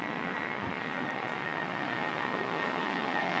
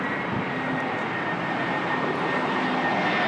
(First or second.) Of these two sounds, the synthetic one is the first